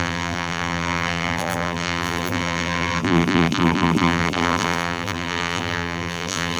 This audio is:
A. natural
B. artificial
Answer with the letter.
B